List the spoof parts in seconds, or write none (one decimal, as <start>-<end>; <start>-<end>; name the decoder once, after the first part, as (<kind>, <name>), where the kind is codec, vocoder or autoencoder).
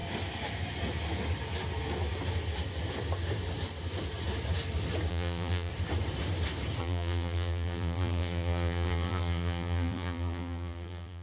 5.1-5.7 (vocoder, BigVGAN v2); 6.8-11.2